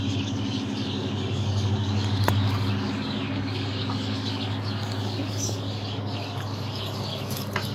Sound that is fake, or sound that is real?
fake